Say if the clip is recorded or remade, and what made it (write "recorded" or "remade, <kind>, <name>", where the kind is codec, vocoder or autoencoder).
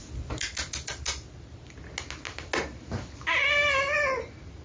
recorded